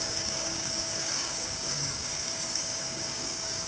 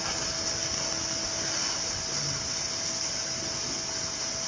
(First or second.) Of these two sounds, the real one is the second